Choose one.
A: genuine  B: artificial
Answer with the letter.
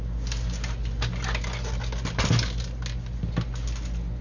A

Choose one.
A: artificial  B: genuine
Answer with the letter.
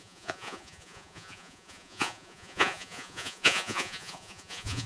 A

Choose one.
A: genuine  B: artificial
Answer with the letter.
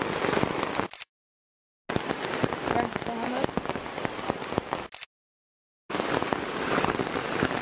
A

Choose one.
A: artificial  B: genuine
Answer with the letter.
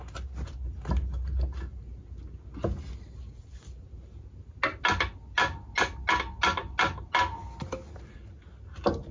B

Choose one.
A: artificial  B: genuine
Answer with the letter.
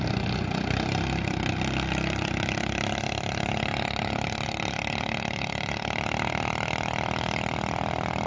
B